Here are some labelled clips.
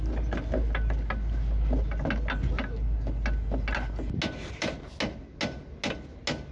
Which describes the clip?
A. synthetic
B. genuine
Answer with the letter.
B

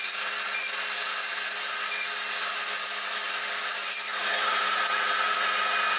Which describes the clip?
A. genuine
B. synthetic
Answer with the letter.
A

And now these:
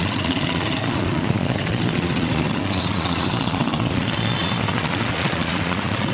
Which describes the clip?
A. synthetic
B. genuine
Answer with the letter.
A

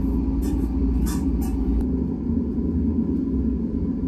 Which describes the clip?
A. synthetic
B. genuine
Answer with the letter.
B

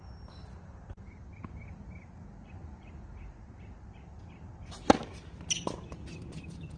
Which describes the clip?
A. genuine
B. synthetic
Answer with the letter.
A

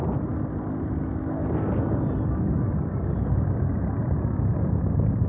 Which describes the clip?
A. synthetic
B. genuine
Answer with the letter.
B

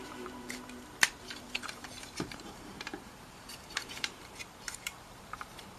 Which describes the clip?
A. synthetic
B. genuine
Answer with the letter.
A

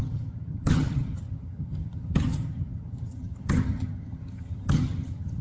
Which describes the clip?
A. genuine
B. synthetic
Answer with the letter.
B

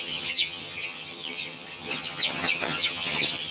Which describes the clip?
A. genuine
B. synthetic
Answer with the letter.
B